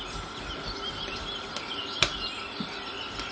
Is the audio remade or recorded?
recorded